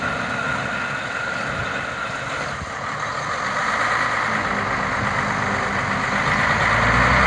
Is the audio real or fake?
real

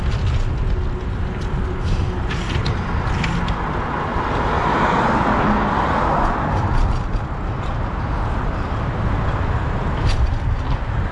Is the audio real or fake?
real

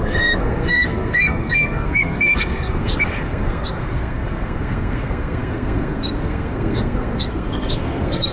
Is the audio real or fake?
fake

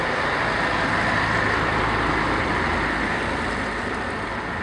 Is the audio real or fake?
real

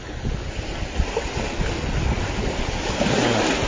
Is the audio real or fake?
real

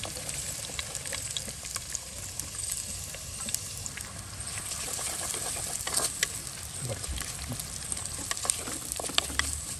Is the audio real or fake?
real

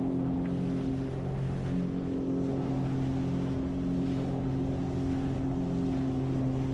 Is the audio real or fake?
real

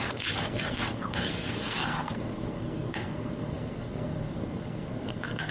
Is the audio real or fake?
fake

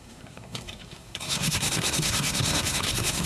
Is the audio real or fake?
fake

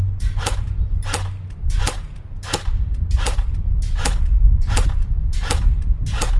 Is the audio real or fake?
real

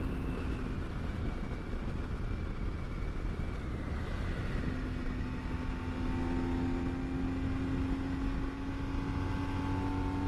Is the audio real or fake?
real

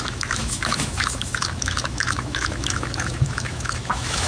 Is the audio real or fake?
fake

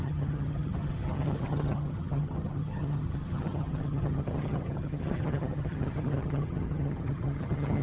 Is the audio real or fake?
fake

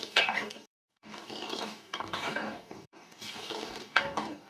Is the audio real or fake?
fake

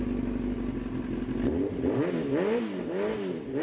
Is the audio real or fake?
real